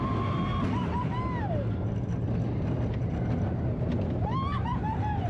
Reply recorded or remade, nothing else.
recorded